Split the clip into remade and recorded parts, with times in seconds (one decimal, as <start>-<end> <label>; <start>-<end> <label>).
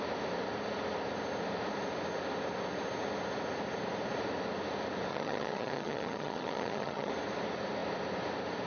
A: 0.0-5.1 recorded; 5.1-7.1 remade; 7.1-8.7 recorded